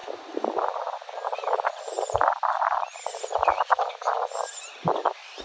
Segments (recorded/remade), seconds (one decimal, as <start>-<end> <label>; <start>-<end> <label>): 0.0-5.4 recorded